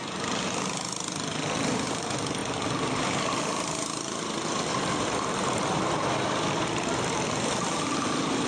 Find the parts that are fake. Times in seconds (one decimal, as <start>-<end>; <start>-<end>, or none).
none